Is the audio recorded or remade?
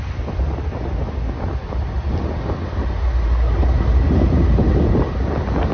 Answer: recorded